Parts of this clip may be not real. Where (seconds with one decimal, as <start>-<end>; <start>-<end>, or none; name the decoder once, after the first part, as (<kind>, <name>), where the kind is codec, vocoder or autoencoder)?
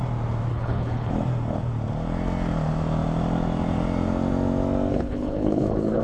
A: 0.5-1.1 (codec, HILCodec); 4.9-6.0